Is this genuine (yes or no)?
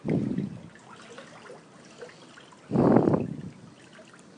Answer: yes